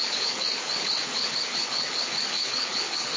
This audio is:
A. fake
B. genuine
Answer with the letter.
A